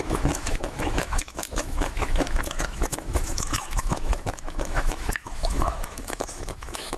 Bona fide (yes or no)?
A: no